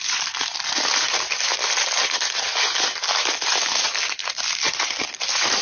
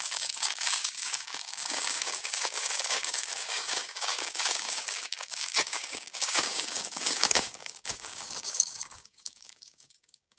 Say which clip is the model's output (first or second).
second